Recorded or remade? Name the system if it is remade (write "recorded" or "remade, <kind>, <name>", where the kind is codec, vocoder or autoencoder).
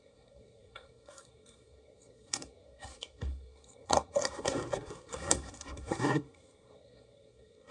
remade, codec, SNAC